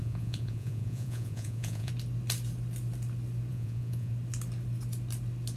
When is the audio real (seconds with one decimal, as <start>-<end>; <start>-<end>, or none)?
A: 1.9-3.5; 4.1-5.6